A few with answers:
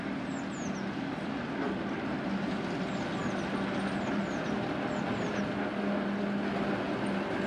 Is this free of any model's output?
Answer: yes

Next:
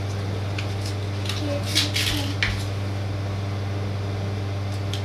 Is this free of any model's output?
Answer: yes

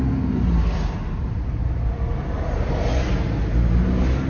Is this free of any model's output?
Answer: yes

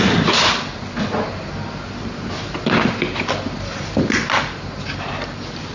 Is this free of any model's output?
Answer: yes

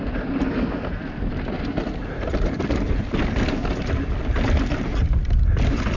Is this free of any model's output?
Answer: yes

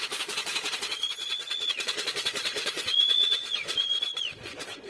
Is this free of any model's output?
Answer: no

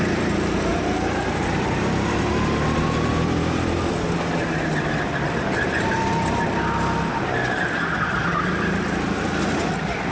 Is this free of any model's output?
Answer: yes